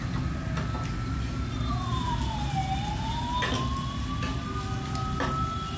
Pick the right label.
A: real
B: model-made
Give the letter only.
A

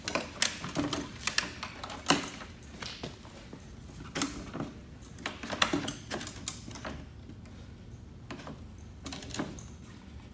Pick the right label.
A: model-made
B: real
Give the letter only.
B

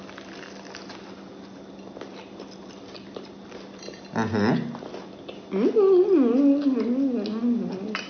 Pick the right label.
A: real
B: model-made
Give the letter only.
A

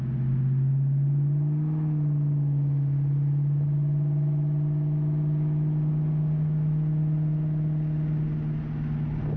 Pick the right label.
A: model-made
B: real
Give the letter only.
B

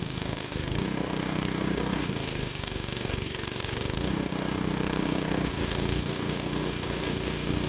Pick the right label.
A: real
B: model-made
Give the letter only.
B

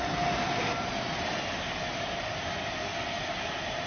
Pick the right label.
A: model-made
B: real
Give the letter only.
B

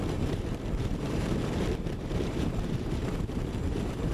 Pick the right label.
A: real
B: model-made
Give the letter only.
B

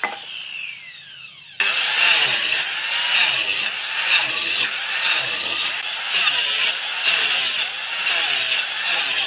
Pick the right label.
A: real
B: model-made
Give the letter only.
A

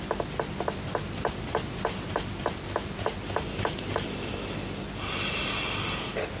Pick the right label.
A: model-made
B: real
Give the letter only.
B